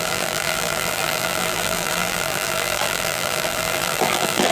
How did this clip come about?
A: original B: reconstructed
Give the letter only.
B